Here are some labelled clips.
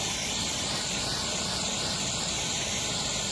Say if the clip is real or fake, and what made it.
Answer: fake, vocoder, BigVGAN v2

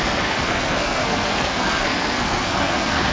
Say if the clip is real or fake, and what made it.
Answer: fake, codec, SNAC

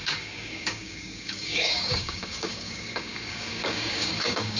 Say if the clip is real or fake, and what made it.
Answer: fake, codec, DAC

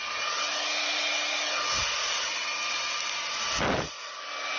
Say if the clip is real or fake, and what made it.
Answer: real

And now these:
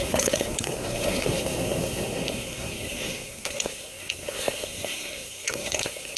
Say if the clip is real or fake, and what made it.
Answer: fake, codec, SNAC